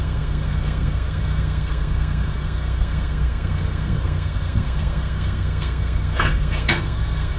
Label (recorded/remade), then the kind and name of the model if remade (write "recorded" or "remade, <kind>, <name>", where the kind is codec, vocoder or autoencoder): remade, codec, SNAC